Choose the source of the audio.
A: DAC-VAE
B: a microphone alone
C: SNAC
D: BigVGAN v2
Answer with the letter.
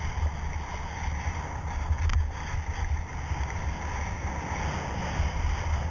B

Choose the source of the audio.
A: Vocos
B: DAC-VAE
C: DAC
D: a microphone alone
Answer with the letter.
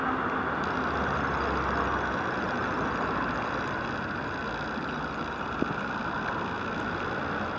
D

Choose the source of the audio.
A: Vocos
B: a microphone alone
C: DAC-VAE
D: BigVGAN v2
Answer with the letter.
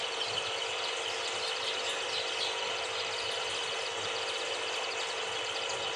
B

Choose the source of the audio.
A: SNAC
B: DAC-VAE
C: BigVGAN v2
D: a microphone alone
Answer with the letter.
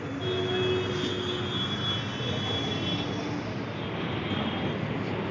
D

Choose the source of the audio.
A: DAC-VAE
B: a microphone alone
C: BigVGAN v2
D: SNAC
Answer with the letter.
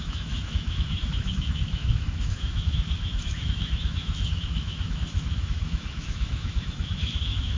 A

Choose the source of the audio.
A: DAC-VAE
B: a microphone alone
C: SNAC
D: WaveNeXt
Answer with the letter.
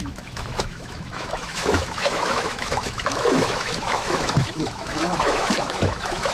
A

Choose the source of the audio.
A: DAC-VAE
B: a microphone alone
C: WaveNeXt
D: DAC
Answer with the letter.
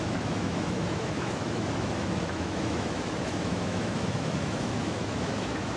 A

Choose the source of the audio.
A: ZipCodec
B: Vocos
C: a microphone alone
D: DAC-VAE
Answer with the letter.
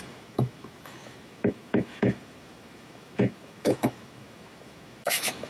D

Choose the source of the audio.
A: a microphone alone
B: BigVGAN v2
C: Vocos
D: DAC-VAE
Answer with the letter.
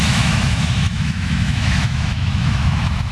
D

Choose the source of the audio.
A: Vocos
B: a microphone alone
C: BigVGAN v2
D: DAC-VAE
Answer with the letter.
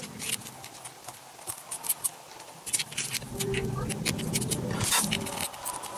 B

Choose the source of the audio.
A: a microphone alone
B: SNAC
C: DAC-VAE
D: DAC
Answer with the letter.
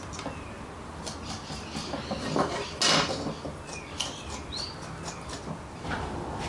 A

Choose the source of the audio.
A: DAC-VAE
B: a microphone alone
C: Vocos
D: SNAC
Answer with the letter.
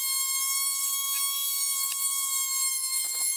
A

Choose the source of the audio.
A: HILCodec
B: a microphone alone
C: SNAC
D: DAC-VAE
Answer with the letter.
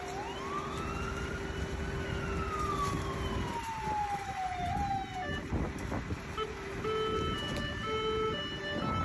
B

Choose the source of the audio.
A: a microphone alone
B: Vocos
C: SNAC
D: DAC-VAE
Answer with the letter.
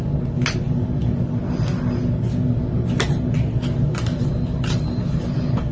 A